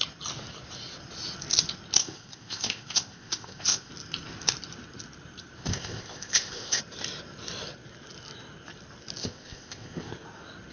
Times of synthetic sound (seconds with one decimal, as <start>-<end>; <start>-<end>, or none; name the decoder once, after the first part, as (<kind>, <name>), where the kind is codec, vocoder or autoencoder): 2.0-3.9 (codec, ZipCodec); 5.6-6.8; 9.2-10.1